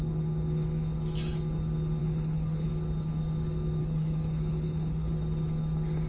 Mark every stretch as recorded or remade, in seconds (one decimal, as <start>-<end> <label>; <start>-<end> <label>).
0.0-2.0 recorded; 2.0-2.7 remade; 2.7-3.8 recorded; 3.8-5.1 remade; 5.1-6.1 recorded

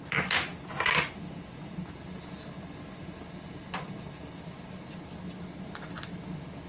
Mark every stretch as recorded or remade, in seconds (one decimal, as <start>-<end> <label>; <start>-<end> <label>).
0.0-6.7 recorded

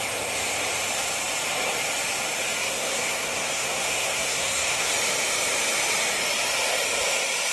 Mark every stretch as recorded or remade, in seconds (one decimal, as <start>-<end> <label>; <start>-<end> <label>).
0.0-2.6 recorded; 2.6-4.9 remade; 4.9-7.5 recorded

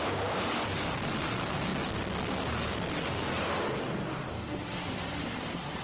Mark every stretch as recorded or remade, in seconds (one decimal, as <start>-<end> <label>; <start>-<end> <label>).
0.0-5.8 recorded

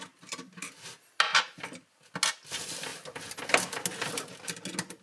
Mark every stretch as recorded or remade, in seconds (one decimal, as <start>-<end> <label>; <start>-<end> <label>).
0.0-5.0 recorded